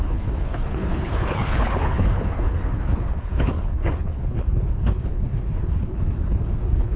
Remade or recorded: remade